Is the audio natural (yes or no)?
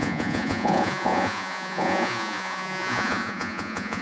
no